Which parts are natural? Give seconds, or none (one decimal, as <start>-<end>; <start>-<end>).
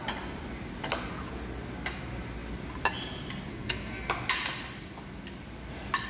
0.0-3.5; 4.1-6.1